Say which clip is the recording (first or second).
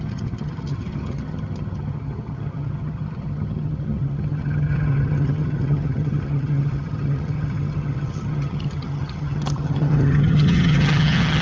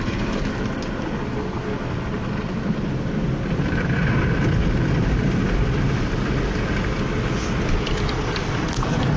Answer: second